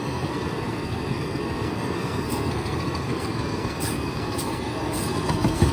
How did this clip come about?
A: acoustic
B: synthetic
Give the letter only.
B